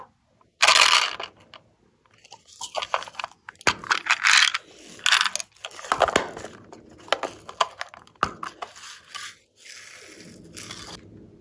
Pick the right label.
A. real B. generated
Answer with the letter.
A